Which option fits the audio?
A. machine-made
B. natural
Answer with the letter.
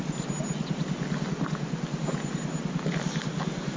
B